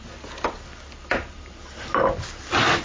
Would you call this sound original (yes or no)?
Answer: yes